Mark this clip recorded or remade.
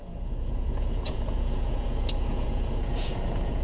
remade